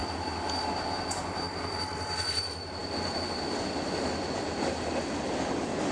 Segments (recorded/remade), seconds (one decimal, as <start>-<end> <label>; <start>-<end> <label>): 0.0-5.9 recorded